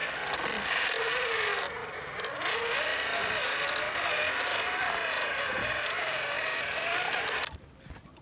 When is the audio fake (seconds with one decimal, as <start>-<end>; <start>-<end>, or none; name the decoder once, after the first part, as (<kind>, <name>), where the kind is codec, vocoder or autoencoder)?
0.0-0.7 (vocoder, BigVGAN v2)